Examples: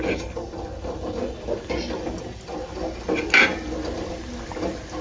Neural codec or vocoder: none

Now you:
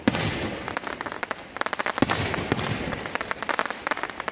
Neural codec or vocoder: none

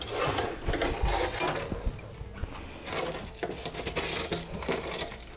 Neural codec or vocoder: none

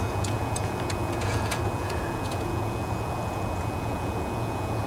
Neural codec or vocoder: vocoder, Vocos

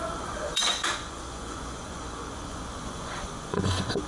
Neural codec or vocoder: vocoder, Vocos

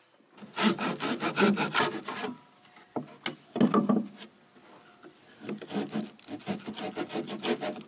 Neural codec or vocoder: none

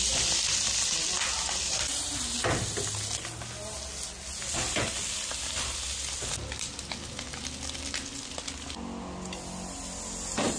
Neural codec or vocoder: none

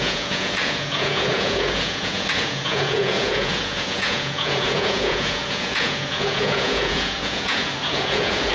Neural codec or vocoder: vocoder, Vocos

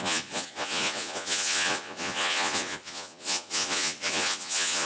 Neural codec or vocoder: vocoder, Vocos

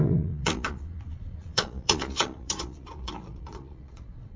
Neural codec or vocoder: vocoder, Vocos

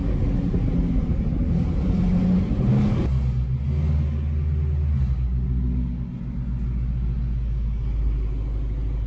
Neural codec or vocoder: none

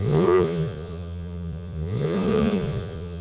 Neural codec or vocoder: vocoder, Vocos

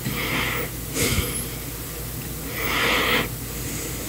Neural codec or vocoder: none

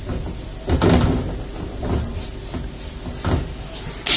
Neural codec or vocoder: none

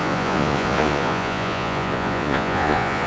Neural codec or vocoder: vocoder, Vocos